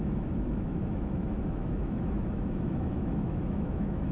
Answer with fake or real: fake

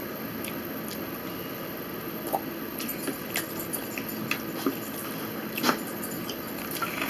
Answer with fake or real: real